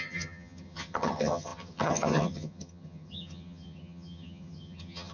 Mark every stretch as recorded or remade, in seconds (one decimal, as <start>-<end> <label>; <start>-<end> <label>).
0.0-5.1 remade